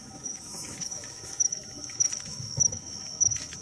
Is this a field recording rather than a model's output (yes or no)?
no